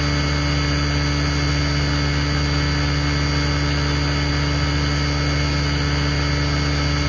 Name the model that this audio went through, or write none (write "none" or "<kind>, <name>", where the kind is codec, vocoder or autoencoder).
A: none